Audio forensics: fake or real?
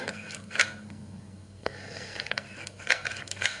fake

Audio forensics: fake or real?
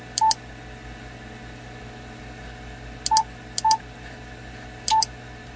real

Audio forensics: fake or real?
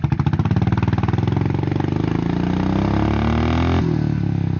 real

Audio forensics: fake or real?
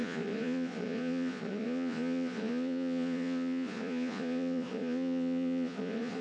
fake